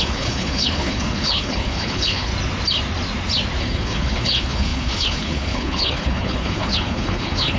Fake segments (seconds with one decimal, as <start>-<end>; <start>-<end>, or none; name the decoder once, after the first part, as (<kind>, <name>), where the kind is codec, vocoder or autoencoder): 0.0-2.3 (codec, HILCodec); 3.6-7.6